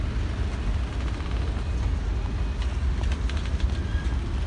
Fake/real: real